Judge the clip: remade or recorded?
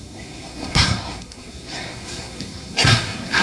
remade